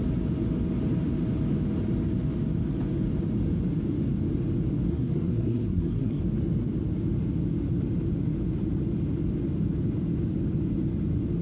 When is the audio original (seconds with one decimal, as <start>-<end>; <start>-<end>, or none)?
0.0-4.9; 6.2-11.4